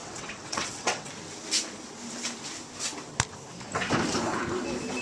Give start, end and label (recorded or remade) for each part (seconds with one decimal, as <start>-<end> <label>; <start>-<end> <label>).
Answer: 0.0-1.1 remade; 1.1-5.0 recorded